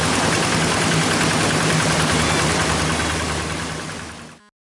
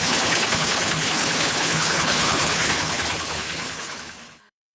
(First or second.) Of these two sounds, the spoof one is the second